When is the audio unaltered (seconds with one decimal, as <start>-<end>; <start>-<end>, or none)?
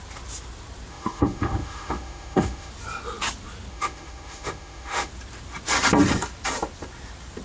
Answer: 0.0-0.9; 2.7-3.7; 5.1-7.4